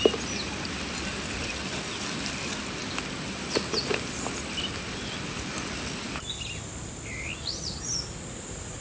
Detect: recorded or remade recorded